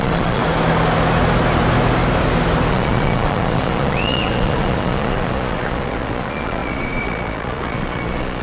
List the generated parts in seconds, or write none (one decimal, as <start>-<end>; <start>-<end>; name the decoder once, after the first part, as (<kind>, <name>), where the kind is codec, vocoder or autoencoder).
0.0-0.4 (vocoder, Vocos); 2.7-8.4